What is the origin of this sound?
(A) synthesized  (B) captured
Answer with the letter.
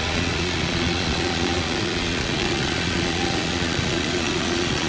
A